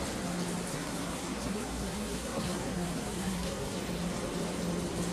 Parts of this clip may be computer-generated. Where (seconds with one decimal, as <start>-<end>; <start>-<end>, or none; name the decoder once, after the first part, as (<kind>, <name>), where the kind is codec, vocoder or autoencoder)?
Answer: 0.7-3.8 (codec, SNAC)

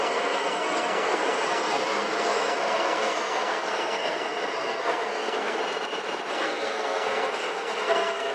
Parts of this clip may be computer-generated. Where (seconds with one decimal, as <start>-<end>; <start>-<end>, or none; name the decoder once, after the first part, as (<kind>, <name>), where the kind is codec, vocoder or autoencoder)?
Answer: 0.0-5.6 (codec, SNAC); 6.3-8.3

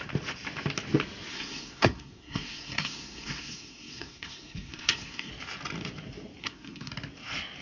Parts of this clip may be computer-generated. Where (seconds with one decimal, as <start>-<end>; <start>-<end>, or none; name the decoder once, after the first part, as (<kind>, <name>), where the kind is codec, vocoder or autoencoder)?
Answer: 1.3-5.3 (codec, SNAC); 6.4-6.9

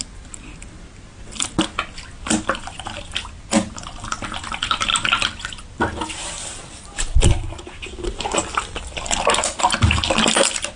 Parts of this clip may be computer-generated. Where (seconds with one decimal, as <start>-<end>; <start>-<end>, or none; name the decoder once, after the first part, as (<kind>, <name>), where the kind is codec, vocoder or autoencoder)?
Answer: none